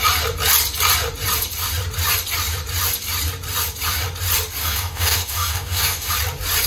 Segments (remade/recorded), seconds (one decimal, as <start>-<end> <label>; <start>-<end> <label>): 0.0-4.6 recorded; 4.6-6.1 remade; 6.1-6.7 recorded